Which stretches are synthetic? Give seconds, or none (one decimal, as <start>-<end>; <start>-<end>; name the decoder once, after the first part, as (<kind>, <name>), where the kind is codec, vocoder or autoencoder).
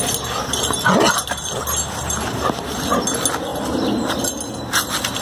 none